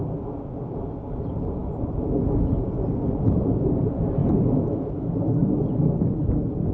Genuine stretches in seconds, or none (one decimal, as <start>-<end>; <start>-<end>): 0.0-6.7